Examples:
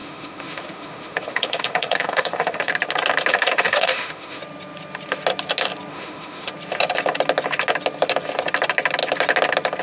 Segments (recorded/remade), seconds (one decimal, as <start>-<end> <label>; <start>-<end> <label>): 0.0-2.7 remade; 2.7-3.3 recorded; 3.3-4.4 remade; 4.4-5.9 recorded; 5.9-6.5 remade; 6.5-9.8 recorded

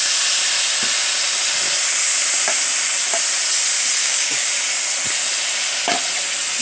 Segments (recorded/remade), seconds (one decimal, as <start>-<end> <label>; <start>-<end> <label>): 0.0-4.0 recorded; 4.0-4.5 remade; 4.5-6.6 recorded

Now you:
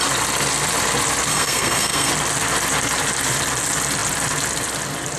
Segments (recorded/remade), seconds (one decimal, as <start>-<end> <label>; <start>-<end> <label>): 0.0-1.3 recorded; 1.3-2.1 remade; 2.1-5.2 recorded

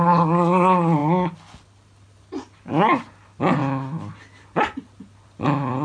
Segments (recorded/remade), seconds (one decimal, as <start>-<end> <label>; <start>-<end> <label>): 0.0-5.8 recorded

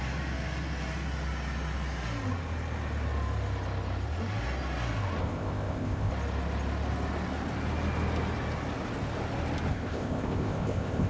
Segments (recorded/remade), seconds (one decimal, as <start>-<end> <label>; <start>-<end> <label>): 0.0-5.2 recorded; 5.2-6.1 remade; 6.1-9.7 recorded; 9.7-11.1 remade

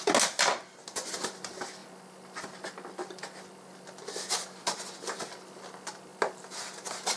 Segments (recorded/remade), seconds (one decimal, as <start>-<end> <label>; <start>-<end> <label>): 0.0-7.2 recorded